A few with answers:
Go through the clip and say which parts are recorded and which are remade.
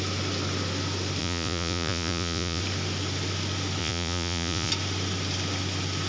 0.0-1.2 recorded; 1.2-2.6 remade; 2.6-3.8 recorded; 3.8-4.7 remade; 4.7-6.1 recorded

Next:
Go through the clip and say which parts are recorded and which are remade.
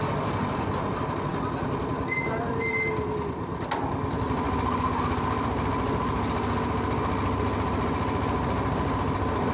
0.0-9.5 recorded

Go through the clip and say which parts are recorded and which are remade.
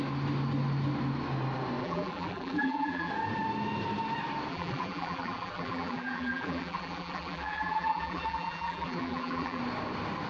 0.0-1.8 recorded; 1.8-3.1 remade; 3.1-4.5 recorded; 4.5-9.6 remade; 9.6-10.3 recorded